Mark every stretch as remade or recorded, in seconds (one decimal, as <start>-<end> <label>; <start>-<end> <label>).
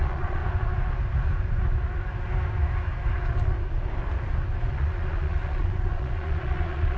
0.0-0.4 remade; 0.4-4.6 recorded; 4.6-7.0 remade